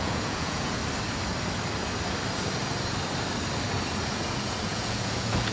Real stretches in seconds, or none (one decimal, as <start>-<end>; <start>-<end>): 0.8-4.1